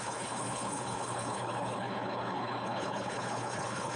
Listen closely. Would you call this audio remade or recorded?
remade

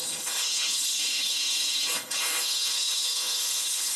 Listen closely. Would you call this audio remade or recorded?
remade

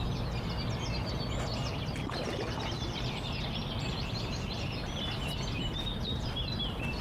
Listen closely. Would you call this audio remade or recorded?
recorded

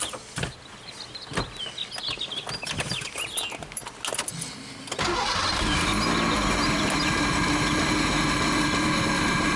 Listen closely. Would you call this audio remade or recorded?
recorded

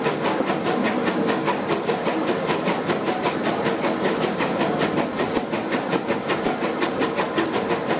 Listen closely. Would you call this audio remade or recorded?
recorded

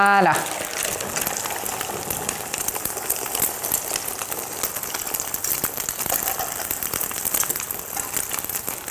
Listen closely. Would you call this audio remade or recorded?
recorded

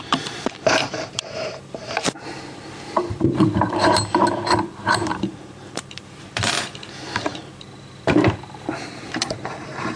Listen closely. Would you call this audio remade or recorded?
remade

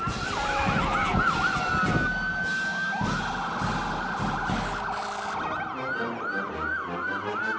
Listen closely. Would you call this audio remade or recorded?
recorded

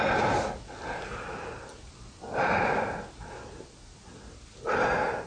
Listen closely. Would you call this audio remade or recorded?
recorded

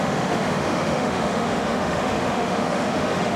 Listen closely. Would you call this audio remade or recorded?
remade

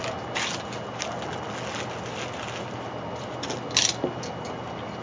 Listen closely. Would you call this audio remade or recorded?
recorded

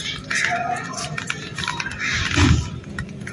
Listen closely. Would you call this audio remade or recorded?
recorded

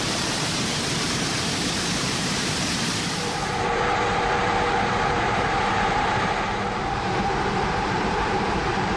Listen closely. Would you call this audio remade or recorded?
remade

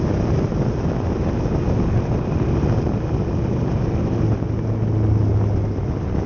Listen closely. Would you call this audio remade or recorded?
recorded